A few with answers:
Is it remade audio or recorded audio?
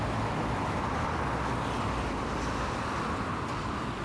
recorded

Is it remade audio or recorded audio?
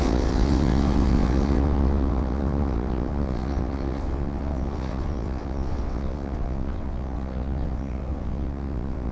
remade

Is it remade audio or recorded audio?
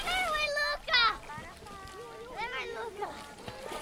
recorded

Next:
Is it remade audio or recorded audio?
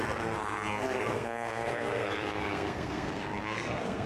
remade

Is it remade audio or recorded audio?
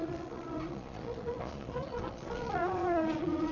remade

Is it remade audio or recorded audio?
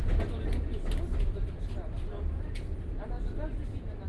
recorded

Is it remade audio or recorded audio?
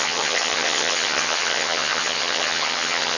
remade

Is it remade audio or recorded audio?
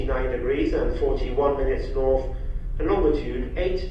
recorded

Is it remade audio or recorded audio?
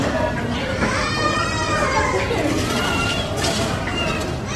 remade